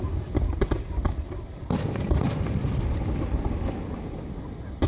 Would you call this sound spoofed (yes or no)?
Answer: no